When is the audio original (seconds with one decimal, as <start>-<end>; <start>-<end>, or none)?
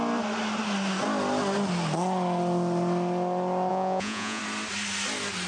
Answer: 0.0-3.7; 4.4-5.5